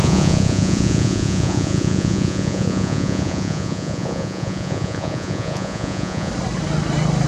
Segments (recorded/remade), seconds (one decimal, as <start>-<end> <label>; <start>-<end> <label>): 0.0-6.3 remade; 6.3-7.3 recorded